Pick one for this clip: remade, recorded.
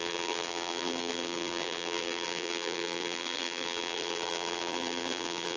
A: remade